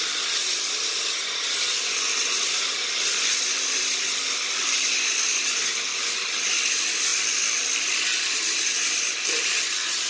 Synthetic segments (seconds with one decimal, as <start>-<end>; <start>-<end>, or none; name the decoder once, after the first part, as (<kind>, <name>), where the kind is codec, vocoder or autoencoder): 0.0-7.1 (vocoder, BigVGAN v2); 8.2-10.1